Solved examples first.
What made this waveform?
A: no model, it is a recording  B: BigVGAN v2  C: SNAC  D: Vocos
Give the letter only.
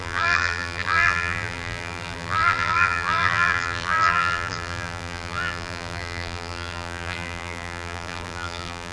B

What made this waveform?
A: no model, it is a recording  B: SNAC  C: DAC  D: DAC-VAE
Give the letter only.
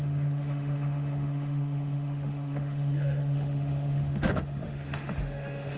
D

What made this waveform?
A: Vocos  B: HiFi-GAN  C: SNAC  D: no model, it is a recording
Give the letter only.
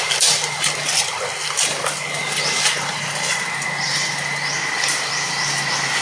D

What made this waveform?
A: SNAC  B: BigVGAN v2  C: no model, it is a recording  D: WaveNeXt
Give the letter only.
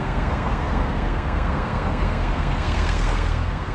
A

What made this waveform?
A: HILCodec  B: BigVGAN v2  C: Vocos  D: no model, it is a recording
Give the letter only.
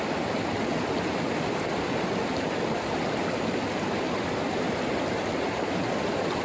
B